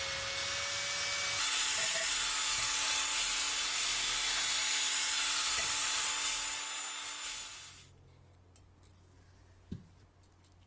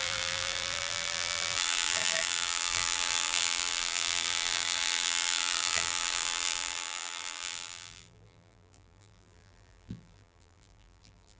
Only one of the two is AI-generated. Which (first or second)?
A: second